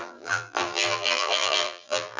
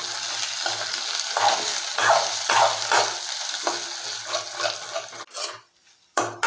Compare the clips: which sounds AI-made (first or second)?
first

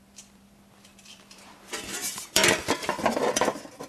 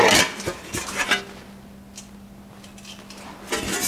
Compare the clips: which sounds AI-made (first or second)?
first